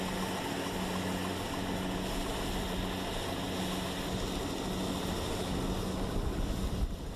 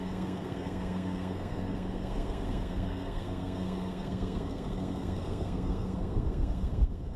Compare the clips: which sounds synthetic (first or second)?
second